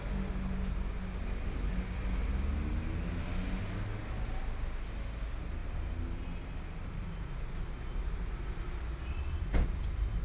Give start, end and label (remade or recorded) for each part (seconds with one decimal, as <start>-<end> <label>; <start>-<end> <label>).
0.0-10.2 recorded